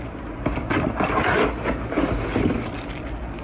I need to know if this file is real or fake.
real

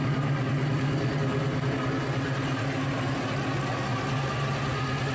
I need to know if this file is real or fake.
real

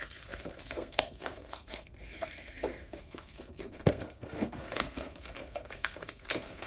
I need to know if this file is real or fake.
fake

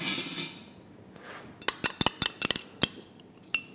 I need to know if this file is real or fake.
real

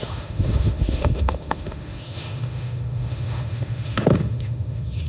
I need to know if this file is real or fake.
fake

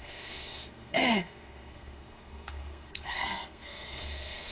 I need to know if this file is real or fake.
fake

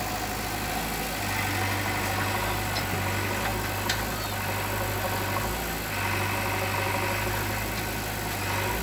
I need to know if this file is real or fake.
real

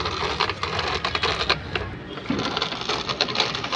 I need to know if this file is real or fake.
real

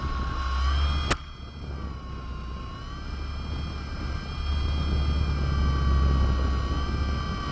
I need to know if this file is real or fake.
real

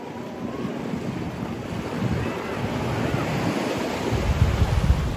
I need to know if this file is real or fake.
real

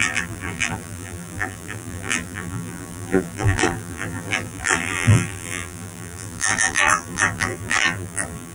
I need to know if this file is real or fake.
fake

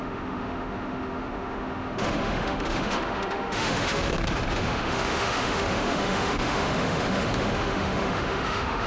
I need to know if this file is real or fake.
fake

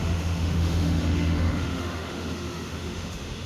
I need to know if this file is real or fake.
fake